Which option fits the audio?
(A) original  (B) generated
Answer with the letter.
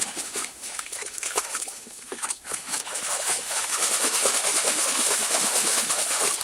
B